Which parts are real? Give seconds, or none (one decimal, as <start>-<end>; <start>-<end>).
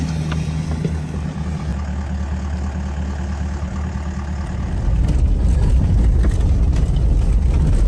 0.0-7.9